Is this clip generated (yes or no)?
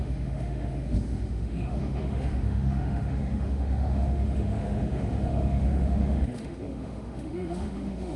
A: yes